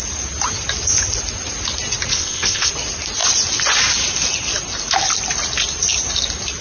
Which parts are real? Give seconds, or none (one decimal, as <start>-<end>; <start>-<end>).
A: 0.0-2.1; 2.7-6.6